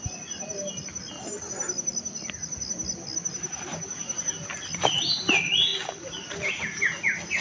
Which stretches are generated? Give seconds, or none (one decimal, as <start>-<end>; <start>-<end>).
none